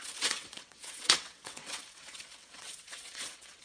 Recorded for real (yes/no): no